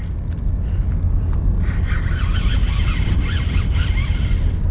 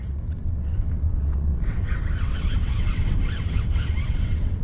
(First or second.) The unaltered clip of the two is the first